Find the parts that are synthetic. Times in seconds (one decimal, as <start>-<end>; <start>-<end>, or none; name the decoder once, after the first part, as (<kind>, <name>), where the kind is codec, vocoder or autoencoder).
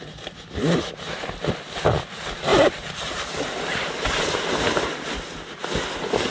2.5-4.8 (vocoder, BigVGAN v2)